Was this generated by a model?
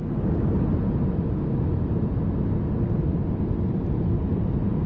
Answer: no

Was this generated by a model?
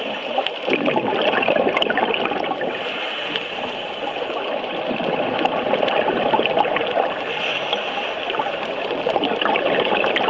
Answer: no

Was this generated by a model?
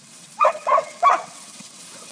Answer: yes